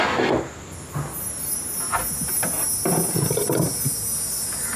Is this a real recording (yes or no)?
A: yes